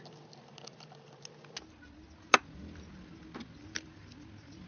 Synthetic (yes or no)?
no